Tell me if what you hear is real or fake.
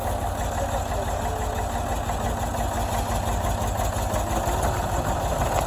real